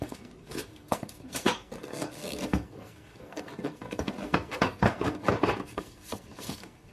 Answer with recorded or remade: remade